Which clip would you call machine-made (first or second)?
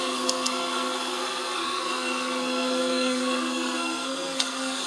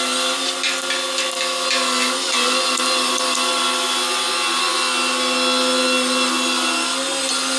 first